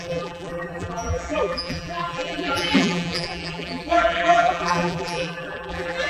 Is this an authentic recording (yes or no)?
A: no